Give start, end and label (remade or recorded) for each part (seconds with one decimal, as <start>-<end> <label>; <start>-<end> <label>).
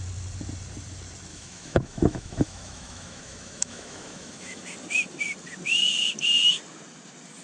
0.0-1.3 recorded; 1.3-4.6 remade; 4.6-7.4 recorded